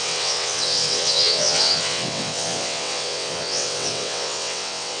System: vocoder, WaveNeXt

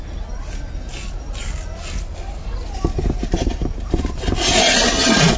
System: none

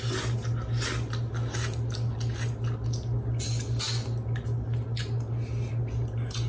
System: none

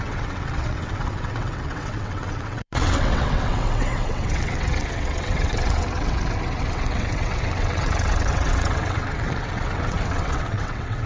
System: vocoder, WaveNeXt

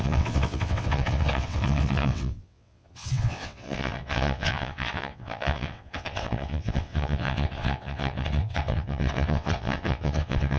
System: vocoder, WaveNeXt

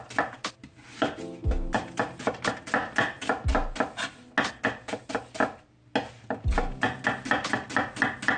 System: none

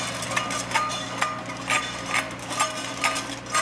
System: none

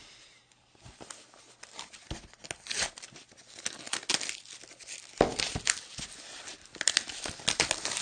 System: none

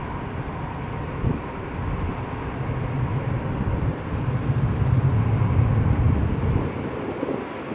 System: none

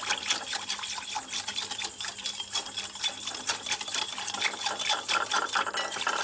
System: none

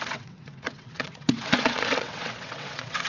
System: vocoder, WaveNeXt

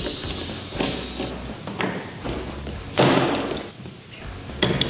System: none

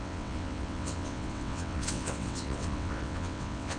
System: vocoder, WaveNeXt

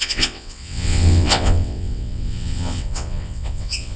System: vocoder, WaveNeXt